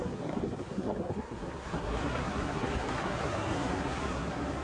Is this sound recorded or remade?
remade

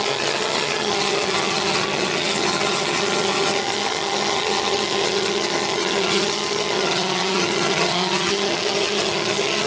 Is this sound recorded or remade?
remade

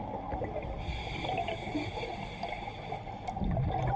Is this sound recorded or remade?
recorded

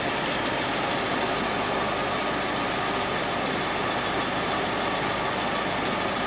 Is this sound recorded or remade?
recorded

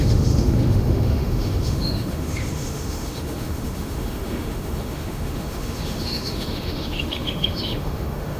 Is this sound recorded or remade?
remade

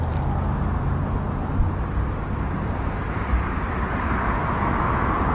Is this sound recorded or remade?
recorded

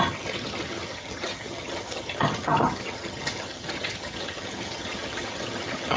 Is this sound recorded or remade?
remade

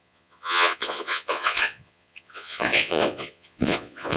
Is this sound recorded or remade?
remade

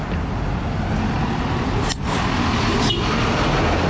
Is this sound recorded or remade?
recorded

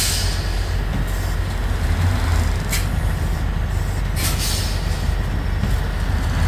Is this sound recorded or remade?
recorded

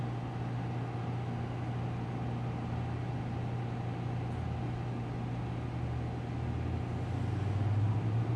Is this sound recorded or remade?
recorded